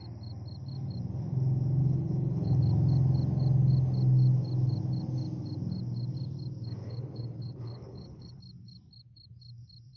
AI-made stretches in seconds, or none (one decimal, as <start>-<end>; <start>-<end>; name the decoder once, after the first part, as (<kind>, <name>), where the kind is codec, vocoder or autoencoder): 1.8-2.6 (codec, HILCodec); 6.8-8.4